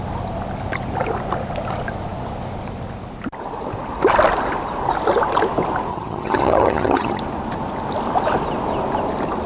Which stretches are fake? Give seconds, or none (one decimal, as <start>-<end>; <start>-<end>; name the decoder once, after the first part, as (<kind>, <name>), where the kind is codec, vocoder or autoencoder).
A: 5.9-7.2 (vocoder, HiFi-GAN)

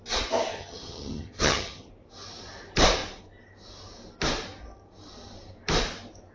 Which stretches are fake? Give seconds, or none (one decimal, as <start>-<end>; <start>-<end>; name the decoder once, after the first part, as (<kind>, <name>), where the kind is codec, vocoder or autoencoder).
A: 0.6-1.9 (vocoder, HiFi-GAN)

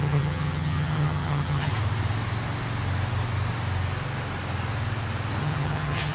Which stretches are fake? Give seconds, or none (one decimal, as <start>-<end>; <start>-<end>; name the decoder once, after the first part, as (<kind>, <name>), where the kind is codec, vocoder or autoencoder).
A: 0.0-1.7 (vocoder, HiFi-GAN); 5.4-6.1

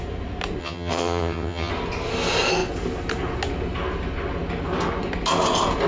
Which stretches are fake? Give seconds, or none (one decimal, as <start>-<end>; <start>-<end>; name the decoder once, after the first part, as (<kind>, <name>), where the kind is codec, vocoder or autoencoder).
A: 0.6-1.7 (vocoder, HiFi-GAN)